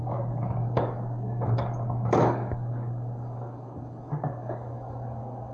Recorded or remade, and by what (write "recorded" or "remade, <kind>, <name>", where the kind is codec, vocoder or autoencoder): remade, codec, DAC